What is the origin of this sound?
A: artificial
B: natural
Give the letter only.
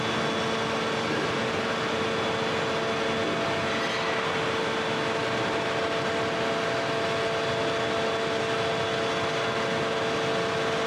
B